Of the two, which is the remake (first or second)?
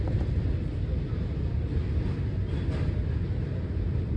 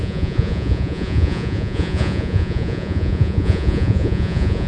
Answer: second